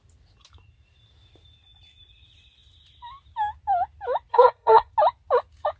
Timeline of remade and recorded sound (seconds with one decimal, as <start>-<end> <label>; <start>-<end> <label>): 0.0-4.3 recorded; 4.3-4.9 remade; 4.9-5.8 recorded